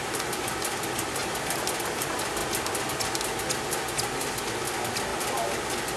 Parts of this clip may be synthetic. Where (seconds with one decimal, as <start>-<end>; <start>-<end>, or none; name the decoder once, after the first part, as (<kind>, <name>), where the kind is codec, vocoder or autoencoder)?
none